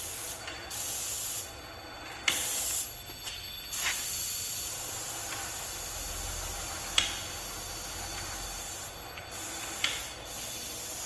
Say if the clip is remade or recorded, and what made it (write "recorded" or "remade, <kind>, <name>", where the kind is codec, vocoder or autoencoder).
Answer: recorded